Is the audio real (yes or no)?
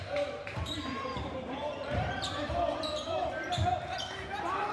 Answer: no